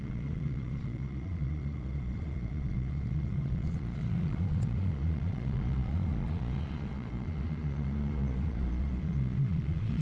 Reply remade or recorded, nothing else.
remade